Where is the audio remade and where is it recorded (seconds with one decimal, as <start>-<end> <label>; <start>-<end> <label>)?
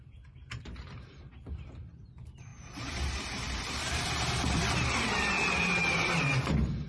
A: 0.0-6.9 remade